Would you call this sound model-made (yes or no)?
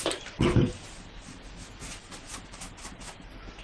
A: no